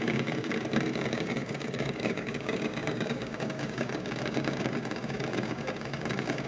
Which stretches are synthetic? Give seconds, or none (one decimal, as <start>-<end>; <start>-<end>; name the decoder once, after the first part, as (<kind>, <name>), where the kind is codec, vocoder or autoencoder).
0.0-6.5 (codec, DAC)

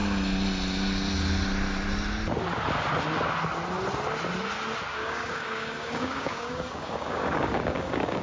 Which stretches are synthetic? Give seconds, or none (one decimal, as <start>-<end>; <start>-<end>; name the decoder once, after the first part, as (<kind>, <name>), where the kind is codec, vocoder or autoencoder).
4.9-8.2 (codec, DAC)